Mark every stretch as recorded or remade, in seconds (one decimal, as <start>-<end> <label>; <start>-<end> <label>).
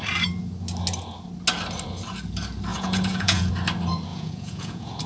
0.0-2.7 recorded; 2.7-3.5 remade; 3.5-4.1 recorded; 4.1-5.1 remade